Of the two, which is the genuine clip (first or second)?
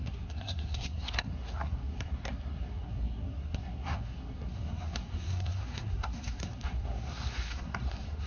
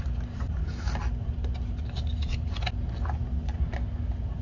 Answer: second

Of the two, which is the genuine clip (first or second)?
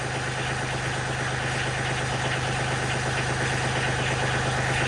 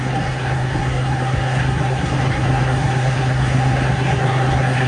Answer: first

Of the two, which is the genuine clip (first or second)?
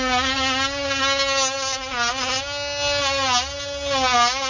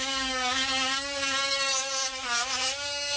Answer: first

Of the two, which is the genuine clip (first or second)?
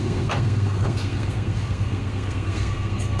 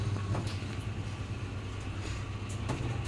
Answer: second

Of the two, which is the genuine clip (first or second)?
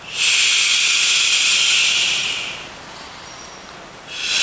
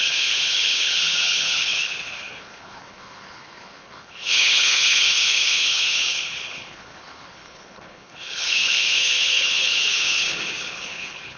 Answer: first